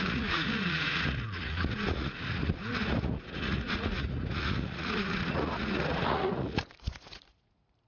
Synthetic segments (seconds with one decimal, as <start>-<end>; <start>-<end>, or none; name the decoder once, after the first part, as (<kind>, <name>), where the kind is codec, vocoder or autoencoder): 0.0-7.9 (vocoder, Vocos)